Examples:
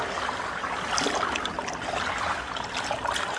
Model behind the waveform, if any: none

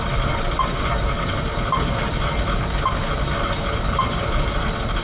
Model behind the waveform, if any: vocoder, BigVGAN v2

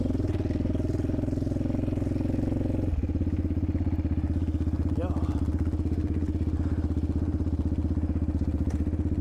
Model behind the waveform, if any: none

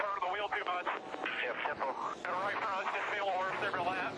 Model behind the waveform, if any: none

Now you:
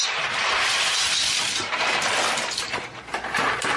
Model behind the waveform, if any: vocoder, BigVGAN v2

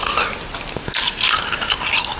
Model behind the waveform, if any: none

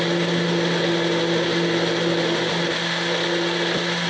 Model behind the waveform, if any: none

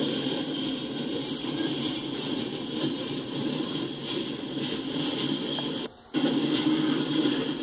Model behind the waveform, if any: vocoder, BigVGAN v2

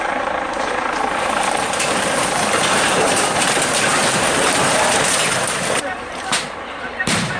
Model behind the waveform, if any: vocoder, BigVGAN v2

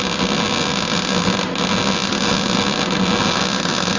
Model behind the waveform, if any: none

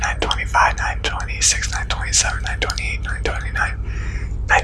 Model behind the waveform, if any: none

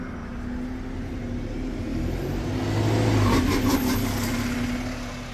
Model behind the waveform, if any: none